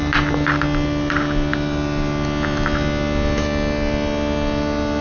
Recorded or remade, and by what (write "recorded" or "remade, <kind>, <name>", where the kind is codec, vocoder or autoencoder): recorded